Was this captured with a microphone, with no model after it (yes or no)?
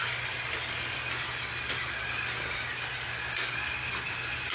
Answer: yes